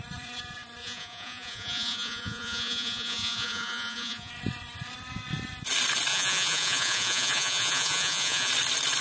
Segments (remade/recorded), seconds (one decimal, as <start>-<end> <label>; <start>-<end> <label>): 0.0-0.8 recorded; 0.8-4.3 remade; 4.3-6.1 recorded; 6.1-8.5 remade; 8.5-9.0 recorded